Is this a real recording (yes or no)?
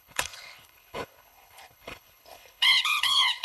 no